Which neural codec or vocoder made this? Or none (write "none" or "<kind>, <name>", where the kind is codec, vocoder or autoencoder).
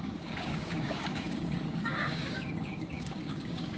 codec, DAC